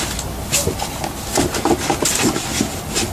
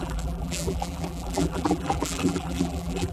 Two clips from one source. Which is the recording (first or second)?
first